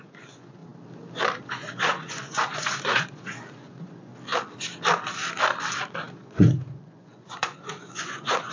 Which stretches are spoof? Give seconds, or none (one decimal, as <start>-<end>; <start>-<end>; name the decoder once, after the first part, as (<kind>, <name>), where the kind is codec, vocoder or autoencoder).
0.0-0.6 (vocoder, Vocos); 1.5-4.1; 6.1-8.5